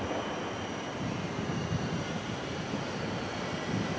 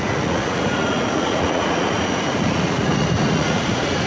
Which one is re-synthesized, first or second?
second